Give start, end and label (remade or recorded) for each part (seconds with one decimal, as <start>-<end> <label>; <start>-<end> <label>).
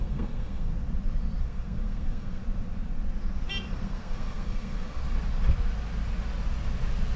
0.0-0.7 remade; 0.7-1.4 recorded; 1.4-2.4 remade; 2.4-3.7 recorded; 3.7-5.0 remade; 5.0-7.2 recorded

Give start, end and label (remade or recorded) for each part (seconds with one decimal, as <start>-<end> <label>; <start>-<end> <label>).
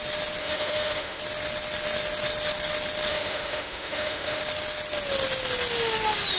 0.0-0.4 recorded; 0.4-1.2 remade; 1.2-3.1 recorded; 3.1-4.4 remade; 4.4-6.4 recorded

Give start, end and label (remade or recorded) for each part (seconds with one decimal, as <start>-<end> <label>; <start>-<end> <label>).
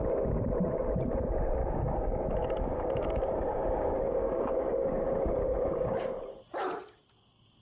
0.0-1.6 recorded; 1.6-6.2 remade; 6.2-7.6 recorded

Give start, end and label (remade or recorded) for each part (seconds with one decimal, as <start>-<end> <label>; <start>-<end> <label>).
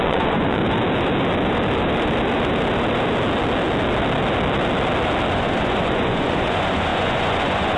0.0-0.6 remade; 0.6-5.3 recorded; 5.3-7.8 remade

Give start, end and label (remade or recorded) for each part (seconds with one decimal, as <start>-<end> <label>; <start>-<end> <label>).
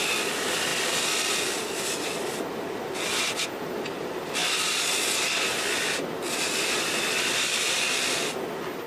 0.0-8.9 recorded